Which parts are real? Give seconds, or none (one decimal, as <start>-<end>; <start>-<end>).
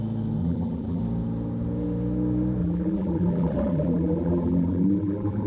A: 0.0-0.4; 1.0-2.6